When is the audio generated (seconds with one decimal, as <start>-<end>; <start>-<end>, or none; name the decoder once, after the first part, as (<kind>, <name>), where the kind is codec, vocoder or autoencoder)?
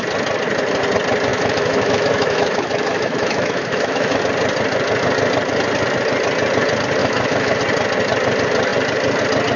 1.3-4.2 (autoencoder, DAC-VAE); 7.0-7.6